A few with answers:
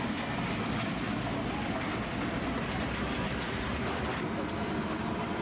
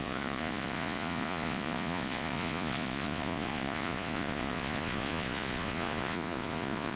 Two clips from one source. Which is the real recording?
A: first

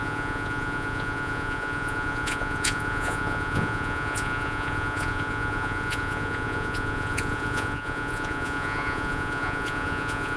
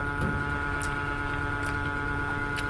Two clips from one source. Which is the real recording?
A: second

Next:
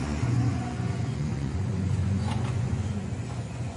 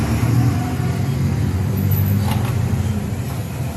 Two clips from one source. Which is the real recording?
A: second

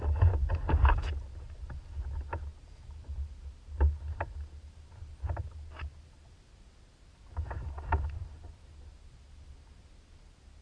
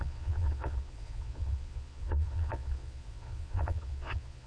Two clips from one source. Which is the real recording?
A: first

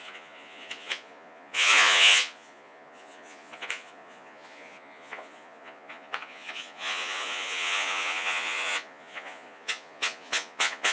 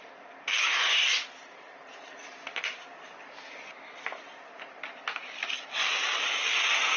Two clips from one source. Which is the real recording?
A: second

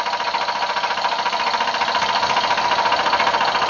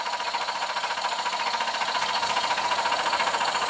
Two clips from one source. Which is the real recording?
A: first